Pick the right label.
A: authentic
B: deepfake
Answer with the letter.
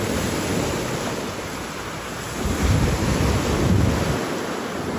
A